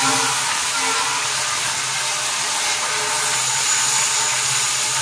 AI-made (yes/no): no